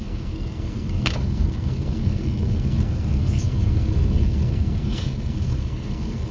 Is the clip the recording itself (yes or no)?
no